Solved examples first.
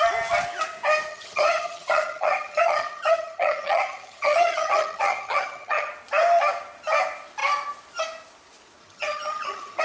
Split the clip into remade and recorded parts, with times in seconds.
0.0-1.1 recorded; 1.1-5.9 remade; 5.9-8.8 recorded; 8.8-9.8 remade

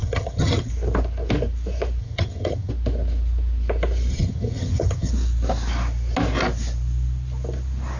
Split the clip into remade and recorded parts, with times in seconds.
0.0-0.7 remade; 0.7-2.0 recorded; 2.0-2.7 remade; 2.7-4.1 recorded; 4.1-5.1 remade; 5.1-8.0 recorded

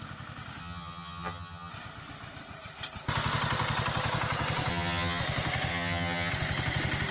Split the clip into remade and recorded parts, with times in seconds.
0.0-0.6 recorded; 0.6-1.7 remade; 1.7-4.7 recorded; 4.7-5.2 remade; 5.2-5.7 recorded; 5.7-6.3 remade; 6.3-7.1 recorded